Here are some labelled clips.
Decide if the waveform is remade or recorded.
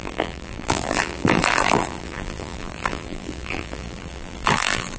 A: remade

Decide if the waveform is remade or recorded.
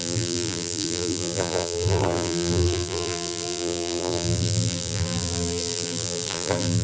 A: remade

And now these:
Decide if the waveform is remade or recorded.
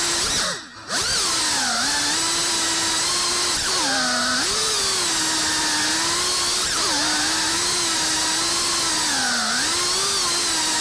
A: recorded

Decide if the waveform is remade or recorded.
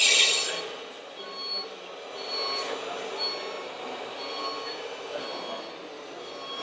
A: recorded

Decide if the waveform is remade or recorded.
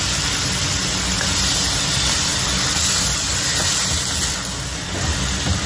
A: recorded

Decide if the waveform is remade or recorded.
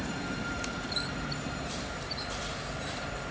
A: remade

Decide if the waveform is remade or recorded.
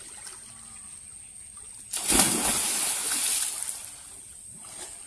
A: recorded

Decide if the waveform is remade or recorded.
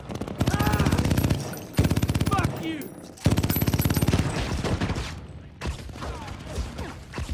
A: recorded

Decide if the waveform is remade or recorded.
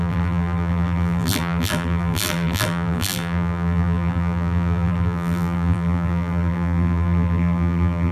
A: remade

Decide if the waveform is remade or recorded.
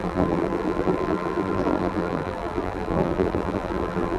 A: remade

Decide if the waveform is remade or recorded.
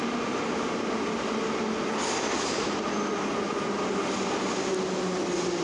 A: recorded